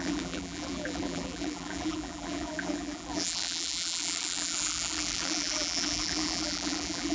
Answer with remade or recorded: remade